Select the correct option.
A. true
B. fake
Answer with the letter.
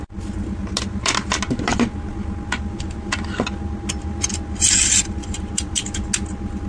A